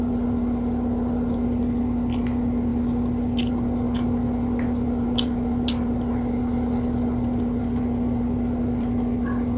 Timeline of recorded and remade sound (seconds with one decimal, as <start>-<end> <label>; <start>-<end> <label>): 0.0-9.6 recorded